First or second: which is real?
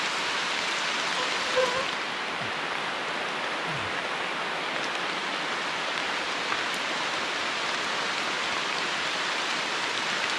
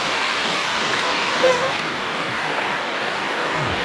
first